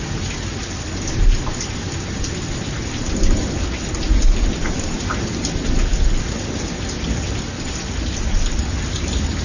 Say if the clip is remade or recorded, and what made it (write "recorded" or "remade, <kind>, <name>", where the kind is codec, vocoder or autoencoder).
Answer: recorded